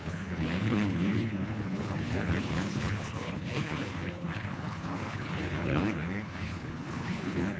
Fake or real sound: fake